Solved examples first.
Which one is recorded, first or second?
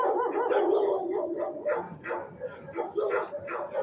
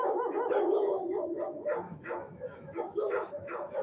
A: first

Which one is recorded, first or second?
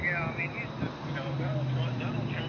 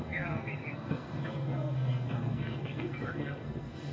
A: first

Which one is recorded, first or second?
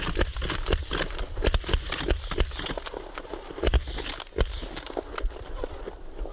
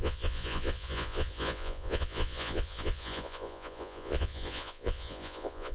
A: first